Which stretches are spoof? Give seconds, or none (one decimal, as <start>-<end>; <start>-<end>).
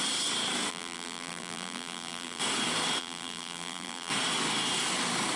0.7-2.4; 3.0-4.1